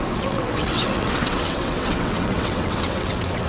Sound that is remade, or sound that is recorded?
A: remade